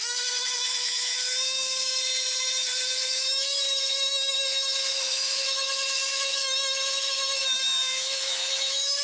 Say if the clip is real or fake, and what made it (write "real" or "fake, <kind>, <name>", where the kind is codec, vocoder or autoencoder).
fake, autoencoder, DAC-VAE